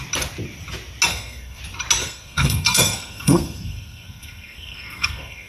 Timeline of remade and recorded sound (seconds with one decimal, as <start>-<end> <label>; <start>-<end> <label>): 0.0-1.1 recorded; 1.1-1.6 remade; 1.6-2.0 recorded; 2.0-5.5 remade